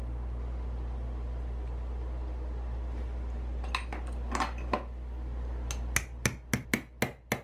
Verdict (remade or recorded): recorded